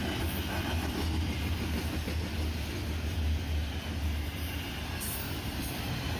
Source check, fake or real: real